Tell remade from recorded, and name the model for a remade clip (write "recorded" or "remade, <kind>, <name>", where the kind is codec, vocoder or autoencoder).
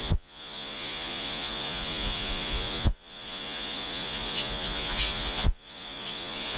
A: remade, vocoder, Vocos